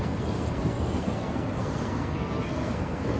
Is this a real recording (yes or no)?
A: no